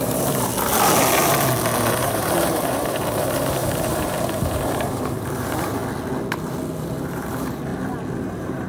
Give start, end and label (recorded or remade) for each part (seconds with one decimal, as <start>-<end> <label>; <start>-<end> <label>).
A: 0.0-0.5 remade; 0.5-2.0 recorded; 2.0-5.8 remade; 5.8-6.8 recorded; 6.8-7.7 remade; 7.7-8.2 recorded; 8.2-8.7 remade